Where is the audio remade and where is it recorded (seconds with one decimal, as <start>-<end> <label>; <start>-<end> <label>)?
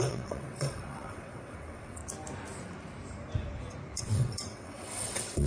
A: 0.0-2.0 remade; 2.0-4.0 recorded; 4.0-5.5 remade